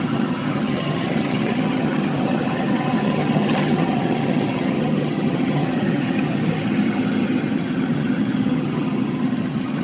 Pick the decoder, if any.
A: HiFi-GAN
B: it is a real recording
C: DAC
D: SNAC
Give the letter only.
A